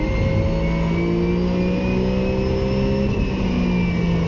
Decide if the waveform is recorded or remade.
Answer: recorded